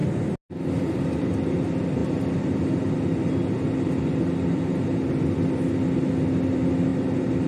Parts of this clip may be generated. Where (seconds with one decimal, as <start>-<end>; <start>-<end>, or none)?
none